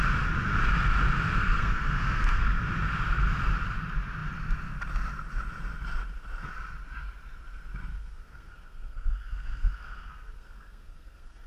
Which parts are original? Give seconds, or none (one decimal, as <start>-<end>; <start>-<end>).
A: 0.0-1.4; 2.6-7.9

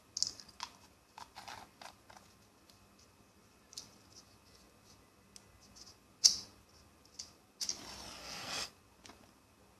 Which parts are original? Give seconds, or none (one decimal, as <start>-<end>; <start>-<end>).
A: 0.0-8.2; 8.7-9.8

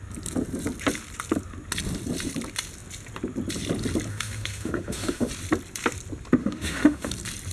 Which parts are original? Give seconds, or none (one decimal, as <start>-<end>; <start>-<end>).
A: 0.0-4.1; 5.3-6.4; 7.1-7.5

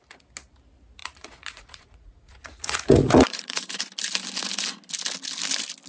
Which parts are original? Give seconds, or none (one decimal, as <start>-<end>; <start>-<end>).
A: 0.0-1.0; 3.8-5.9

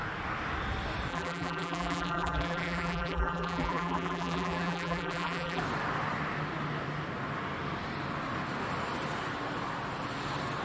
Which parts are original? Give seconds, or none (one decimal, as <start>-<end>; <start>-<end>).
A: 0.0-1.1; 5.6-10.6

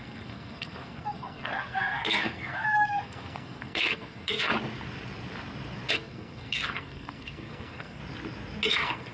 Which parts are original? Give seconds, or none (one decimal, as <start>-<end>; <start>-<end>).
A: 4.5-5.9; 8.0-8.7